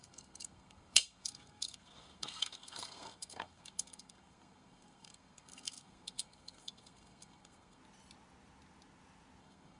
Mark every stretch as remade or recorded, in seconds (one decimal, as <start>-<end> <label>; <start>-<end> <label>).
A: 0.0-7.8 remade; 7.8-9.4 recorded; 9.4-9.8 remade